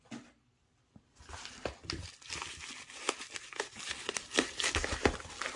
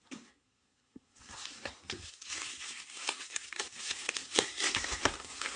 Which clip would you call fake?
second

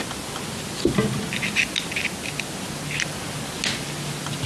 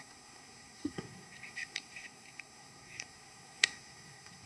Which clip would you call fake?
second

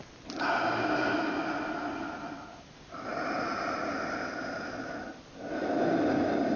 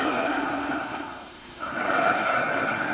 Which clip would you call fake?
second